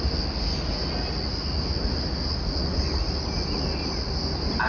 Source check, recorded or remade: recorded